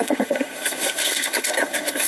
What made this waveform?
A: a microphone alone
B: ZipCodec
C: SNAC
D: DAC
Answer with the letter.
C